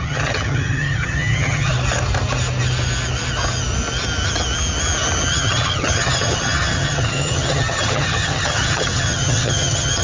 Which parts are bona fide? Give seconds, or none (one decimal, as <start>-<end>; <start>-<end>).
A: 1.7-5.3